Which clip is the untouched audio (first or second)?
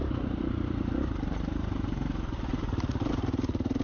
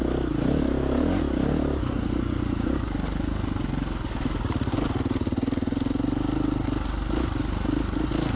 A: second